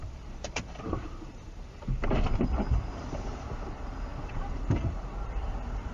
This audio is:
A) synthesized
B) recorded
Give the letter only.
A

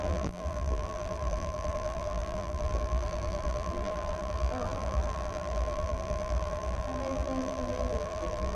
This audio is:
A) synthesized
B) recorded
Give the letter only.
A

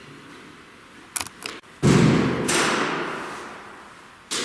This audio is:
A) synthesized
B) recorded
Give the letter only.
B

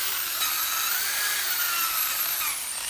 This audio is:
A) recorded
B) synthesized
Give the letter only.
B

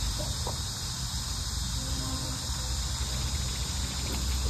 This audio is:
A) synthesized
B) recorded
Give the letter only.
B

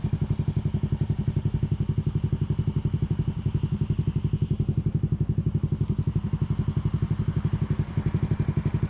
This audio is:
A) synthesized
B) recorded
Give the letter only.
B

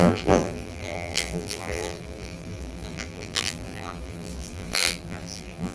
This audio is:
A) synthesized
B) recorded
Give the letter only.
A